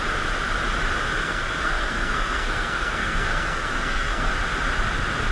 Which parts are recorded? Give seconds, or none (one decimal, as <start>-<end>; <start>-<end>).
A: 0.0-1.1; 4.3-5.3